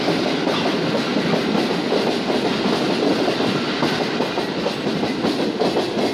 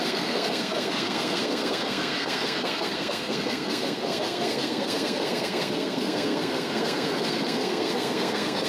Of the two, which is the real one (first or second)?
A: first